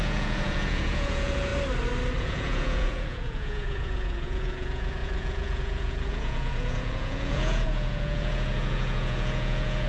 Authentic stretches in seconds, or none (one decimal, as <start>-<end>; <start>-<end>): 1.5-2.2